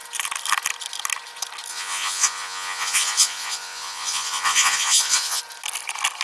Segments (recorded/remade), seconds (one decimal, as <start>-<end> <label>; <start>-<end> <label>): 0.0-1.7 recorded; 1.7-5.4 remade; 5.4-6.2 recorded